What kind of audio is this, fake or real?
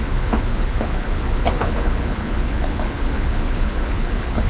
fake